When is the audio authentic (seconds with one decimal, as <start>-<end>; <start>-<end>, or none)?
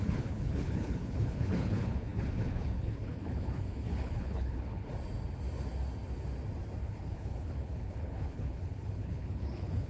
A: 4.9-6.8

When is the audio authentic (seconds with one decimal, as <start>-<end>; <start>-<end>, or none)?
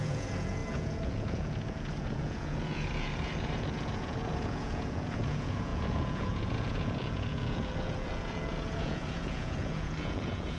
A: none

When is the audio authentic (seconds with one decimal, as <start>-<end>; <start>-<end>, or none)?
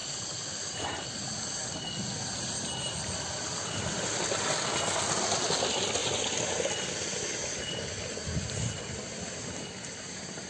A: 1.1-10.5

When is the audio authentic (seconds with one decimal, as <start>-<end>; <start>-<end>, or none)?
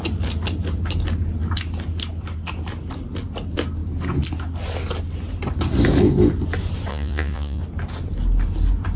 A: 0.0-6.9; 7.6-9.0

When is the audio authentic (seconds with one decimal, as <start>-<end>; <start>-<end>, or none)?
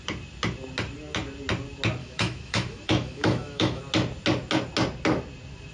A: 0.0-2.0; 3.8-5.7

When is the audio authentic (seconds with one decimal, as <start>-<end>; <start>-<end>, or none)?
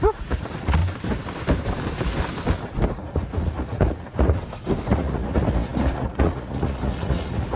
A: 0.8-2.9; 4.4-4.9